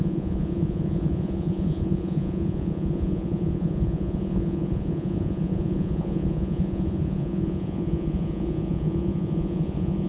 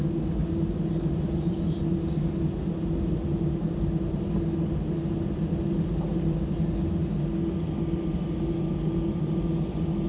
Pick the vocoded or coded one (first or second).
first